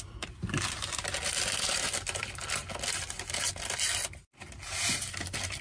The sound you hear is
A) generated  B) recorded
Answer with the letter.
B